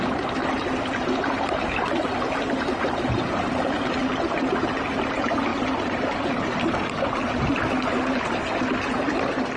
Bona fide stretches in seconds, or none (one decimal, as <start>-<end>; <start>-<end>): 0.0-5.5; 6.4-9.6